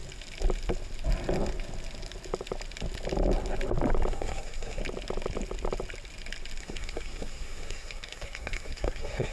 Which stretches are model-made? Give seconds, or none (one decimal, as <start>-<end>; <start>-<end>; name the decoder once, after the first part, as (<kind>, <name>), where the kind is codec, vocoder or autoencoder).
4.1-4.8 (codec, SNAC); 6.6-9.3